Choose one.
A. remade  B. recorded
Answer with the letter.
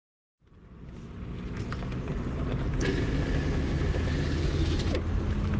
B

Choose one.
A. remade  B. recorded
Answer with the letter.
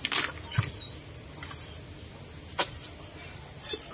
B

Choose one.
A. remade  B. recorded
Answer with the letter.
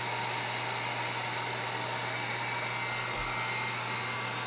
B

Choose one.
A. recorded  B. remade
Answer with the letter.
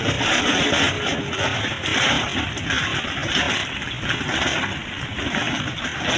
A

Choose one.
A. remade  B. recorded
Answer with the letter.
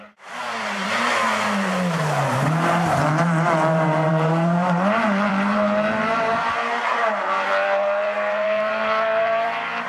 A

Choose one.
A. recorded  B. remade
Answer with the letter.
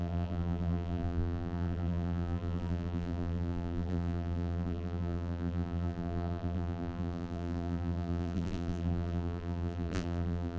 B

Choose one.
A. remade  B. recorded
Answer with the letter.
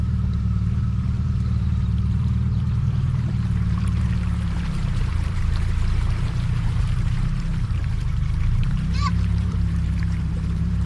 A